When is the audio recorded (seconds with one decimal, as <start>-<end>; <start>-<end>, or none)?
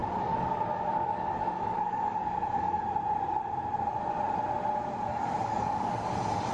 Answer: 2.8-5.1; 5.9-6.5